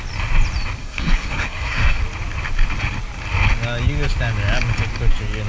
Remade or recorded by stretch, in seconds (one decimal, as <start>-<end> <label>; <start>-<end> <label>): 0.0-0.8 recorded; 0.8-2.0 remade; 2.0-5.5 recorded